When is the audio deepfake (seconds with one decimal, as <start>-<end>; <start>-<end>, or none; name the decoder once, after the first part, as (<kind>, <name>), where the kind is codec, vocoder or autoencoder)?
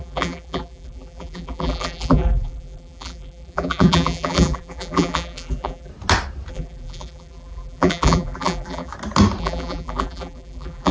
0.0-5.9 (vocoder, BigVGAN v2); 6.5-8.9; 9.4-10.9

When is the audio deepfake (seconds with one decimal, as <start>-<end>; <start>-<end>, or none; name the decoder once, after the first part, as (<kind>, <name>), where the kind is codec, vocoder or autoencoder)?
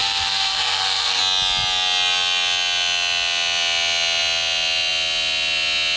0.0-1.2 (codec, SNAC)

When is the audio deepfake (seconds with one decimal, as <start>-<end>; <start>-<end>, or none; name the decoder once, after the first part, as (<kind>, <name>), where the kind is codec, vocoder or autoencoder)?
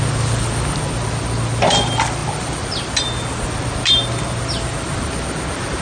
none